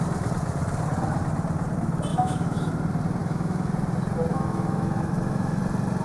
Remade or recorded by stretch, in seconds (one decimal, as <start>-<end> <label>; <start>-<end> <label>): 0.0-2.1 recorded; 2.1-2.7 remade; 2.7-3.2 recorded; 3.2-3.7 remade; 3.7-4.3 recorded; 4.3-5.6 remade; 5.6-6.0 recorded